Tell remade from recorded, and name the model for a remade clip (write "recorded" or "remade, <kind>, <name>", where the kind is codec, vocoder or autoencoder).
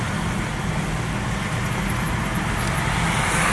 recorded